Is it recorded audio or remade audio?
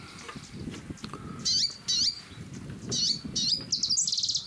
recorded